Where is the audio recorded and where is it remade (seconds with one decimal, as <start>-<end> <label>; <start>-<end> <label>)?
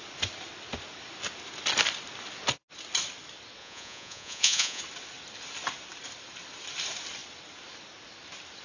0.0-3.6 recorded; 3.6-4.8 remade; 4.8-8.6 recorded